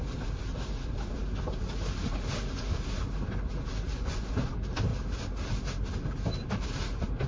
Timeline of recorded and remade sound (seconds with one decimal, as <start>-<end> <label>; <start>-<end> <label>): 0.0-3.9 recorded; 3.9-4.5 remade; 4.5-7.3 recorded